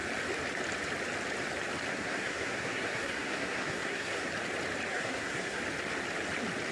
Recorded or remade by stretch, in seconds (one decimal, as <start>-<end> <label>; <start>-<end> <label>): 0.0-1.9 recorded; 1.9-4.3 remade; 4.3-4.9 recorded; 4.9-5.6 remade; 5.6-6.7 recorded